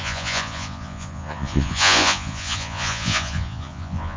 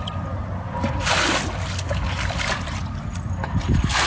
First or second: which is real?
second